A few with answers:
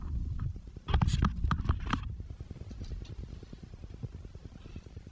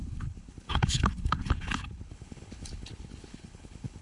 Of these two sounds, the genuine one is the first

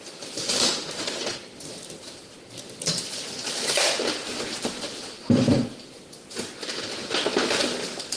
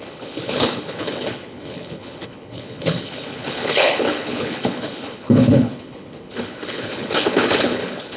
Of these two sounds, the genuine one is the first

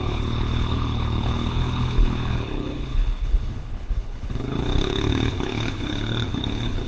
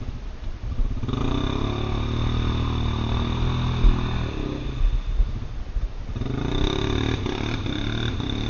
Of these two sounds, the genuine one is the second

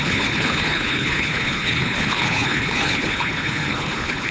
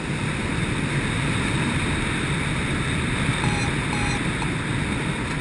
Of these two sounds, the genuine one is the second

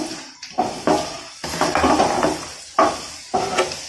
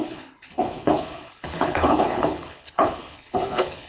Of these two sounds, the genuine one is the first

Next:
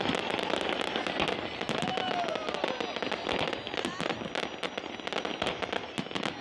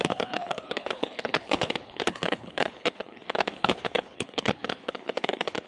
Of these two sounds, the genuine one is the first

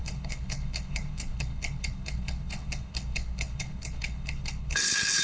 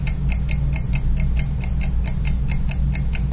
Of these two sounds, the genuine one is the second